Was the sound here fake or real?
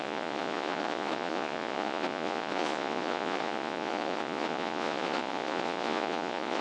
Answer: fake